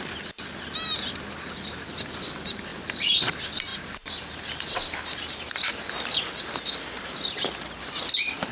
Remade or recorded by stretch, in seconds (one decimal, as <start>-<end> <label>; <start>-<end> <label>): 0.0-2.7 recorded; 2.7-3.2 remade; 3.2-3.7 recorded; 3.7-5.9 remade; 5.9-8.5 recorded